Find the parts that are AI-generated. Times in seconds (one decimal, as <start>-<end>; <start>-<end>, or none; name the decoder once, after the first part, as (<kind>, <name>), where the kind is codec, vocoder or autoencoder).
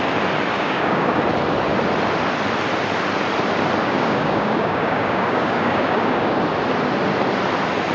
0.5-1.2 (codec, DAC); 3.8-6.4